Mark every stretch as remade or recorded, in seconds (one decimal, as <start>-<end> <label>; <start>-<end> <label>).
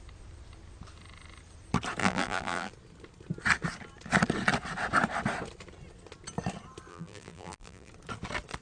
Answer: 0.0-2.0 recorded; 2.0-2.7 remade; 2.7-6.9 recorded; 6.9-7.9 remade; 7.9-8.6 recorded